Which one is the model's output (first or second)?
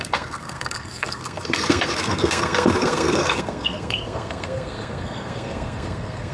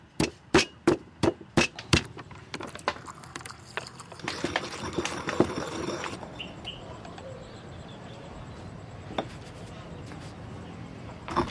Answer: first